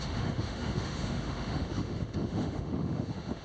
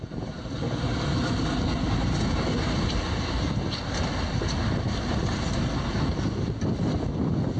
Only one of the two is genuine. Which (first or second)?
second